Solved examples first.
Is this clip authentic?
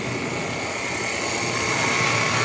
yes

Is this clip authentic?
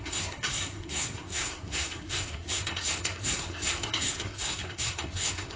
no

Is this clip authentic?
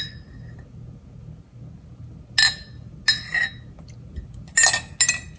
yes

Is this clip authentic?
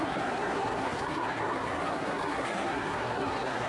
no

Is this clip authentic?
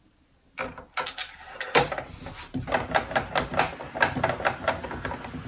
yes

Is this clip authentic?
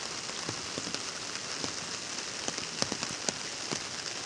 yes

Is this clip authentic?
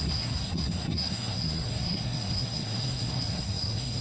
no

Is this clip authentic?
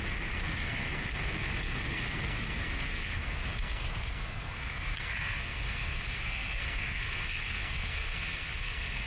no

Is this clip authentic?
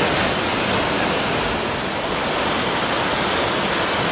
yes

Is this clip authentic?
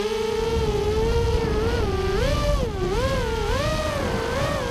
yes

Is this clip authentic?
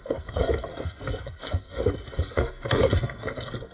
no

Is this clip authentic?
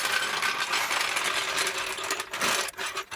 yes